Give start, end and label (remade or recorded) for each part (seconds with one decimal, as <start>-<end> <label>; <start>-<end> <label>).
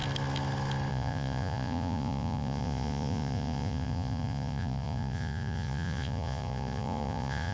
0.0-0.9 recorded; 0.9-7.5 remade